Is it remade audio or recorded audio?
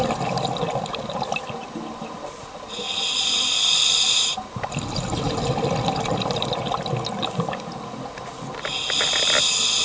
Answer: recorded